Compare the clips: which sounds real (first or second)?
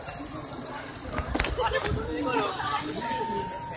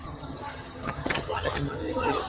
first